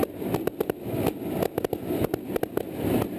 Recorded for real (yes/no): yes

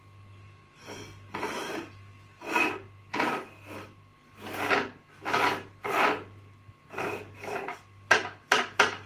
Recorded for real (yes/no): yes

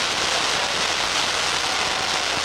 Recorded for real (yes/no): yes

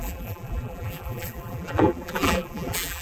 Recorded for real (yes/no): no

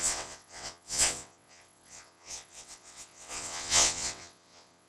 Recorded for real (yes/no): no